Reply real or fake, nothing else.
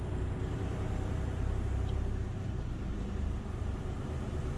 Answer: fake